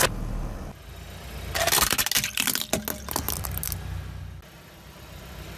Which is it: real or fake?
real